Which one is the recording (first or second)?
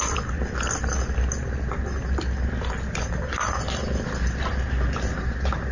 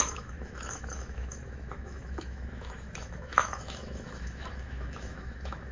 first